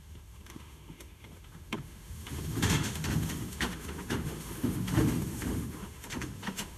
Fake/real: fake